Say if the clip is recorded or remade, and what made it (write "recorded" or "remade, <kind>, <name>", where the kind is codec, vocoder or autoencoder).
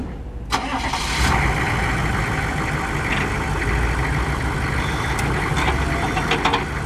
recorded